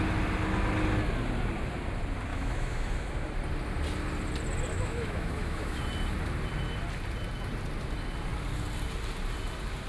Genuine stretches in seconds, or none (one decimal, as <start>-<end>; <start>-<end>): 0.0-2.3; 3.3-4.7; 5.8-9.9